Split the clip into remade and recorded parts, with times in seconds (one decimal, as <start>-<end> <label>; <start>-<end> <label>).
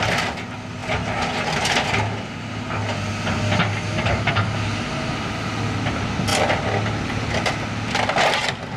0.0-8.8 recorded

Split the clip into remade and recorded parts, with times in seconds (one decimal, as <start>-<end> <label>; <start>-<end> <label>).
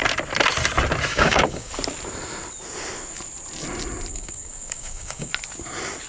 0.0-1.1 recorded; 1.1-1.7 remade; 1.7-4.1 recorded; 4.1-5.3 remade; 5.3-6.1 recorded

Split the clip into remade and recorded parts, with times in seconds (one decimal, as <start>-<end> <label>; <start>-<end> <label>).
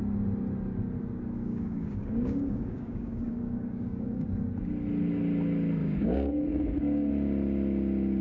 0.0-1.4 recorded; 1.4-4.5 remade; 4.5-5.8 recorded; 5.8-7.1 remade; 7.1-8.2 recorded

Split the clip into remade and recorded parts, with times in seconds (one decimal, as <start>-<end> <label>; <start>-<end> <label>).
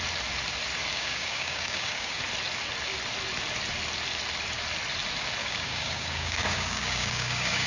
0.0-0.9 recorded; 0.9-2.2 remade; 2.2-5.4 recorded; 5.4-7.7 remade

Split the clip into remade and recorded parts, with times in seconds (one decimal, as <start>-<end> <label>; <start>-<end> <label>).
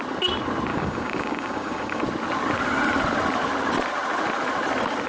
0.0-0.7 recorded; 0.7-2.0 remade; 2.0-5.1 recorded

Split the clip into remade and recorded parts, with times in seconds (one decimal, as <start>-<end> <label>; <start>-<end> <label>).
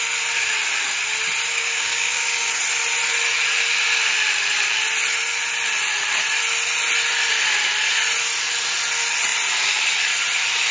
0.0-1.5 recorded; 1.5-2.6 remade; 2.6-10.7 recorded